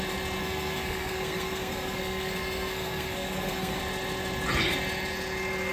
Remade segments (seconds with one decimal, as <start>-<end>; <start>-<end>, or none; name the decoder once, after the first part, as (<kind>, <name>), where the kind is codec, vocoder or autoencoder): 0.4-3.8 (codec, SNAC)